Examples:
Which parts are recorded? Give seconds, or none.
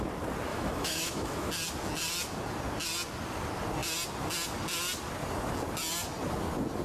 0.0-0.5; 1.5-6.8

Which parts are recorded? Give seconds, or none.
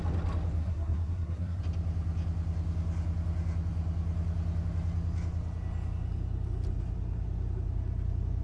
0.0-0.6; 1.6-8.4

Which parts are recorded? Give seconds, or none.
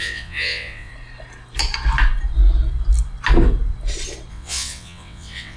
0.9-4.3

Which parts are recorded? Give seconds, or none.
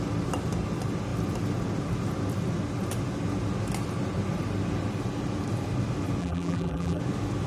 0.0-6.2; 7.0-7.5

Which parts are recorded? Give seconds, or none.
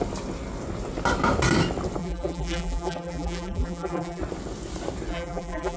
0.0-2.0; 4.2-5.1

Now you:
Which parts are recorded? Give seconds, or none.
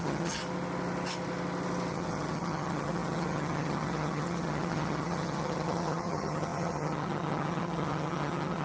0.4-1.9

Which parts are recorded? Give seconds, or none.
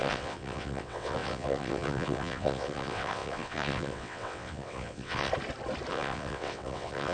5.3-5.9